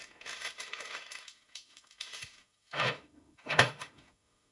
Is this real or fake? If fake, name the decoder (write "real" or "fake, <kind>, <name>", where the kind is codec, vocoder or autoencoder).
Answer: fake, autoencoder, DAC-VAE